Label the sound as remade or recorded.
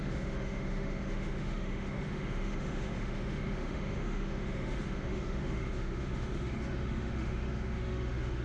remade